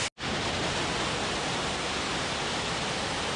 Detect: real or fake real